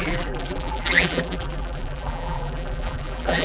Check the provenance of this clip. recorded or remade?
remade